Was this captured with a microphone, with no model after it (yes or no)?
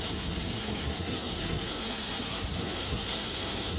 no